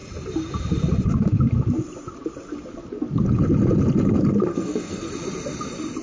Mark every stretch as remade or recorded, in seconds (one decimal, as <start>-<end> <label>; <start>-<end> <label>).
0.0-4.5 recorded; 4.5-5.1 remade; 5.1-6.0 recorded